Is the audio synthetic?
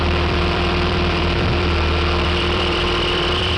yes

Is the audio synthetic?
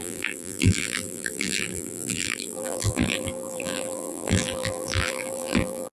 yes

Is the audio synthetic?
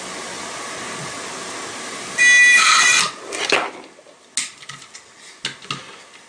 no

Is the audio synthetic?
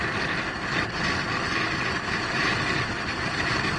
no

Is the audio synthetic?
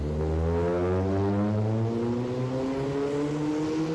no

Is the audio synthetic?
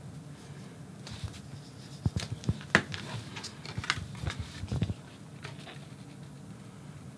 no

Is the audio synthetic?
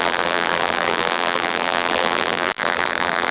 yes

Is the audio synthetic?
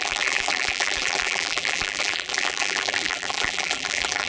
yes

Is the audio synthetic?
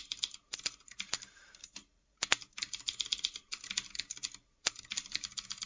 yes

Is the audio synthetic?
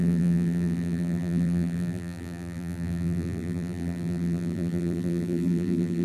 yes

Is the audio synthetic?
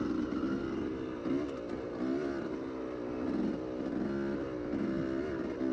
no